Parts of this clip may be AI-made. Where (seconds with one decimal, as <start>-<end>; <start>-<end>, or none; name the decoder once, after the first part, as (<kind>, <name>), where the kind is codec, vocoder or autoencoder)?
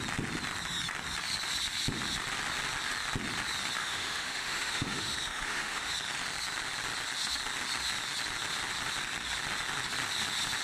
3.8-5.9 (autoencoder, DAC-VAE)